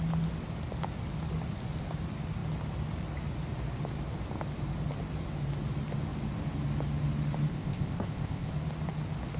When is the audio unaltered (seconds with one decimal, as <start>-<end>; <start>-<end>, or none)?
0.0-7.5; 8.5-9.4

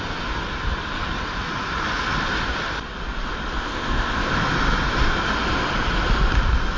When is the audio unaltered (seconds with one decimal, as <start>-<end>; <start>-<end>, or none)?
0.0-3.6; 4.3-6.8

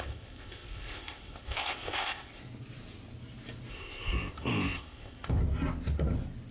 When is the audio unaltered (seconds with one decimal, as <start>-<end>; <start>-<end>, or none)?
2.4-3.7; 5.4-6.5

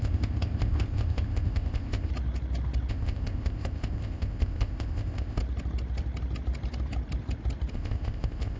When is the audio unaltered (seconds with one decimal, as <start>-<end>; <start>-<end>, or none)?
2.1-2.9; 5.4-7.7

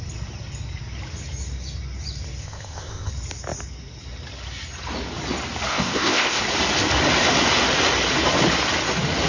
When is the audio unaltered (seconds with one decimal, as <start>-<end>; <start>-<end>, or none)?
0.0-2.4; 3.1-5.7; 6.4-9.3

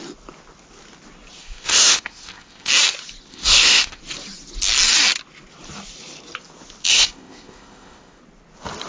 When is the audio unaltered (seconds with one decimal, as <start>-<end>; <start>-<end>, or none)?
0.0-1.4; 2.7-3.3; 4.0-6.9; 8.2-8.9